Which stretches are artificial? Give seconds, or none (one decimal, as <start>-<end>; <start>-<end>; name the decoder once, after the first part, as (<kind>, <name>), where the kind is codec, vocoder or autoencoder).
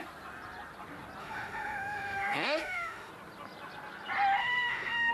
1.2-3.1 (autoencoder, DAC-VAE); 4.4-5.1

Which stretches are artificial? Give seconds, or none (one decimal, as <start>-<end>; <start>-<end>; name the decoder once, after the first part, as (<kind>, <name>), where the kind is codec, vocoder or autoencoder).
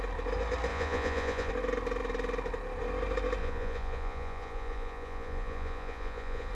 0.7-1.5 (vocoder, Vocos); 3.4-6.5